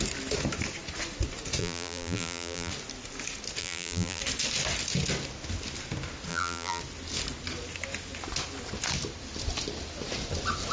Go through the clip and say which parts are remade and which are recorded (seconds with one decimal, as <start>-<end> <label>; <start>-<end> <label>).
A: 0.0-1.6 recorded; 1.6-2.7 remade; 2.7-3.6 recorded; 3.6-4.2 remade; 4.2-6.3 recorded; 6.3-6.8 remade; 6.8-10.7 recorded